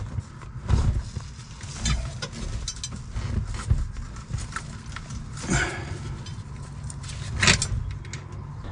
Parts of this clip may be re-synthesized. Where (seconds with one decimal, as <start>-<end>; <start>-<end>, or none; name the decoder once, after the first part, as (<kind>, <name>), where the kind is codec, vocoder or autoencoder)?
none